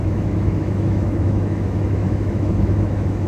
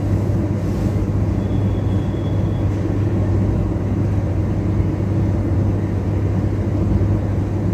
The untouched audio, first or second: second